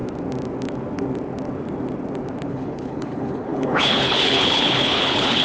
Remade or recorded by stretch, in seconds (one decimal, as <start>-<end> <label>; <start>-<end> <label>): 0.0-2.5 recorded; 2.5-5.4 remade